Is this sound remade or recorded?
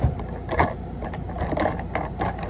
recorded